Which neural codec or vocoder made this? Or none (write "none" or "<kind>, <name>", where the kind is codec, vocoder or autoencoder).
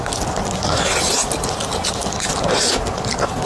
none